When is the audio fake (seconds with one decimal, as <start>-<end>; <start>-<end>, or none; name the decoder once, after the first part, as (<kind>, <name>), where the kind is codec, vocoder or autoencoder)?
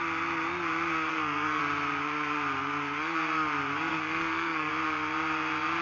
1.1-1.6 (codec, SNAC); 3.9-4.7